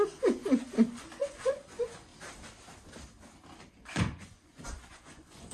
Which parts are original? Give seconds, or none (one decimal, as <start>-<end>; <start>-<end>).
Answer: 2.1-3.7